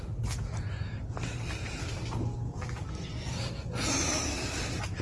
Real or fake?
real